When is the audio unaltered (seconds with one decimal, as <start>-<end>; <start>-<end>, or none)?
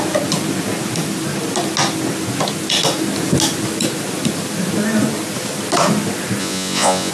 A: 0.0-6.4